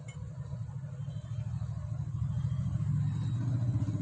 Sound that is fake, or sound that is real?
real